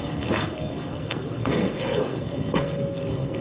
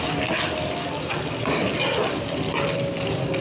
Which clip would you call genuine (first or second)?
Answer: second